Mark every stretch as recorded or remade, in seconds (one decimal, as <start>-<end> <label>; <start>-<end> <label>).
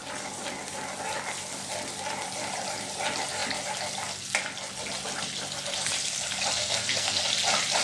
0.0-6.6 recorded; 6.6-7.2 remade; 7.2-7.8 recorded